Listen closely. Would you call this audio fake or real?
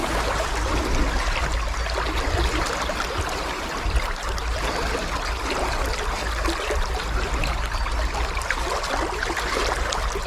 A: real